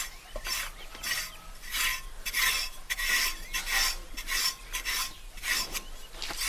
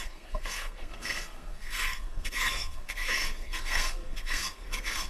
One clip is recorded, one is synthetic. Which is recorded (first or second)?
first